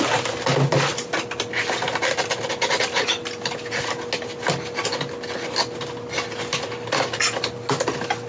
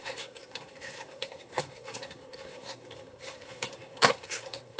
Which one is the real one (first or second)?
first